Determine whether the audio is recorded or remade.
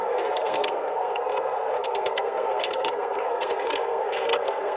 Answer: remade